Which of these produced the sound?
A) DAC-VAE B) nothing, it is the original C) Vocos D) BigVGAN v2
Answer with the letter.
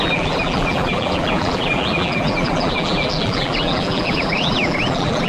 D